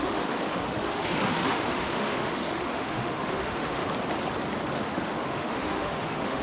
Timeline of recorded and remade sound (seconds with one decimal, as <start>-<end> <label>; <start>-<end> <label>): 0.0-3.8 remade; 3.8-4.7 recorded; 4.7-6.4 remade